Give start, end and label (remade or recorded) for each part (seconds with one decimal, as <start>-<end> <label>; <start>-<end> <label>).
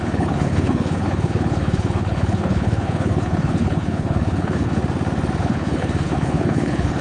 0.0-4.8 remade; 4.8-5.4 recorded; 5.4-7.0 remade